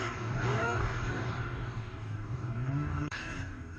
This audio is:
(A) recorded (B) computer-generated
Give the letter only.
B